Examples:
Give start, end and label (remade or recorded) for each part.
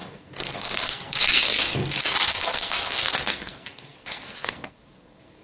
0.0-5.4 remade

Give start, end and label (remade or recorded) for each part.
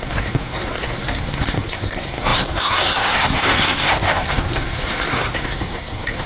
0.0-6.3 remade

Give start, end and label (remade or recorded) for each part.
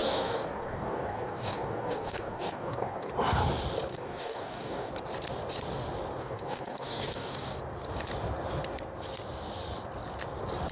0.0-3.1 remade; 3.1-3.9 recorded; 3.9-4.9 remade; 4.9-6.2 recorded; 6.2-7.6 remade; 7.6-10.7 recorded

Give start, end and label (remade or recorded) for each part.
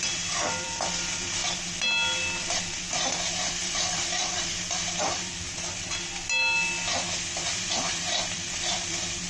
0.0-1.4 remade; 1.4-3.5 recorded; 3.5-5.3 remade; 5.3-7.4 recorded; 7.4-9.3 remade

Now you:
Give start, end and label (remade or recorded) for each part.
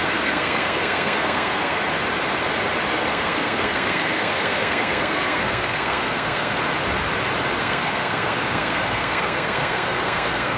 0.0-1.8 remade; 1.8-2.9 recorded; 2.9-6.6 remade; 6.6-7.6 recorded; 7.6-10.6 remade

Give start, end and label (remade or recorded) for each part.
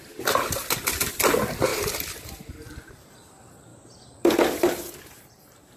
0.0-1.7 recorded; 1.7-3.3 remade; 3.3-3.7 recorded; 3.7-5.8 remade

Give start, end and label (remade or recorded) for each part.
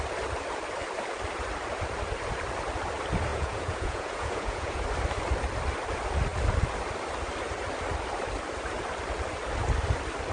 0.0-3.3 recorded; 3.3-4.8 remade; 4.8-10.3 recorded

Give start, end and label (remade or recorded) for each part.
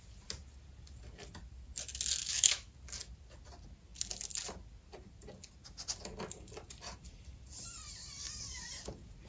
0.0-2.2 recorded; 2.2-2.7 remade; 2.7-9.3 recorded